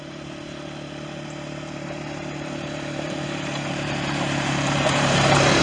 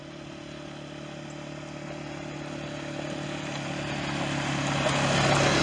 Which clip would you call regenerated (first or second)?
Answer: first